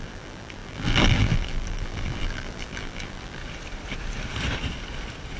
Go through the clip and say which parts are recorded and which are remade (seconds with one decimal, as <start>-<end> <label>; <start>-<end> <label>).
0.0-3.4 remade; 3.4-5.4 recorded

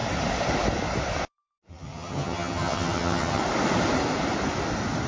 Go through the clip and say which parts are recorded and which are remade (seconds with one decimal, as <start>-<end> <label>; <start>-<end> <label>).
0.0-1.7 recorded; 1.7-3.4 remade; 3.4-5.1 recorded

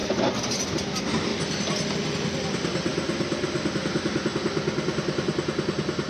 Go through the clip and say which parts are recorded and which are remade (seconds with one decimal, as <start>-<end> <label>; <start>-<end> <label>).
0.0-6.1 recorded

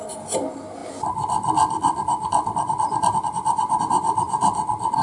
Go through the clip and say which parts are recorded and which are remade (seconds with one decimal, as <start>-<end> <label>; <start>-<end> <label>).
0.0-0.8 recorded; 0.8-3.8 remade; 3.8-5.0 recorded

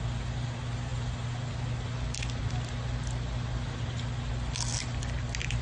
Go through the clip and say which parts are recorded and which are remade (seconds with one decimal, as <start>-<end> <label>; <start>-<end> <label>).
0.0-5.6 recorded

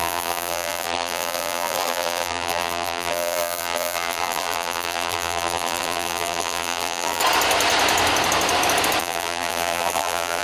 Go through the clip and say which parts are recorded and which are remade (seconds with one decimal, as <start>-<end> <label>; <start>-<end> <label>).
0.0-7.2 remade; 7.2-9.0 recorded; 9.0-10.4 remade

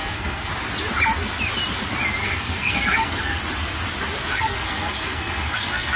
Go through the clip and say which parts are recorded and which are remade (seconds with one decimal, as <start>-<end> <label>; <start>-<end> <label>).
0.0-0.5 remade; 0.5-2.2 recorded; 2.2-3.4 remade; 3.4-4.3 recorded; 4.3-6.0 remade

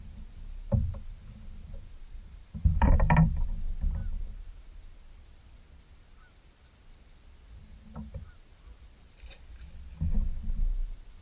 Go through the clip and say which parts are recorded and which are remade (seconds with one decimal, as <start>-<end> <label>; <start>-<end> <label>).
0.0-2.0 recorded; 2.0-2.9 remade; 2.9-11.2 recorded